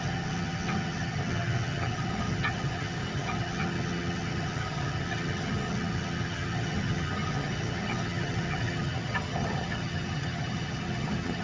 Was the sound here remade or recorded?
remade